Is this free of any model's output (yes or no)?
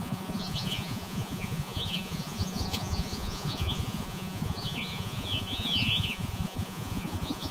no